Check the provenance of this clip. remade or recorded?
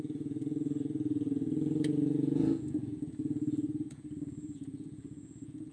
remade